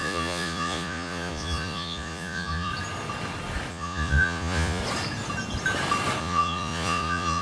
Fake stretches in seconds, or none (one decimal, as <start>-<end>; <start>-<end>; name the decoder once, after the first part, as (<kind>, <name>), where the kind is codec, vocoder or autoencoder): 0.0-2.7 (vocoder, Vocos); 3.7-4.8; 6.2-7.4